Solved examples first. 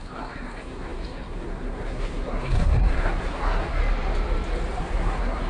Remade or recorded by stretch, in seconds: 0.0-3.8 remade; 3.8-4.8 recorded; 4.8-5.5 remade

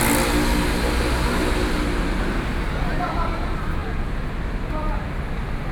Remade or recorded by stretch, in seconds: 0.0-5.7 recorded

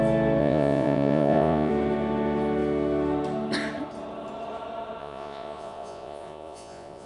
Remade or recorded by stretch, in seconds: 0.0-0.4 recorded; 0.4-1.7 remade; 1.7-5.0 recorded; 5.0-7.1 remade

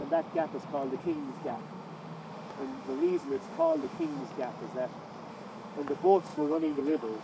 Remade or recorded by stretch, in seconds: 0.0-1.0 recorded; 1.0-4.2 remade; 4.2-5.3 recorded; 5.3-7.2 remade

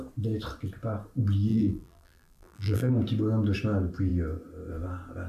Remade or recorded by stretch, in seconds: 0.0-1.5 recorded; 1.5-2.9 remade; 2.9-5.3 recorded

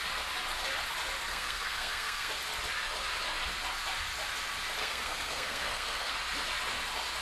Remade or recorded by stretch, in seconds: 0.0-1.3 recorded; 1.3-2.3 remade; 2.3-4.8 recorded; 4.8-6.1 remade; 6.1-7.2 recorded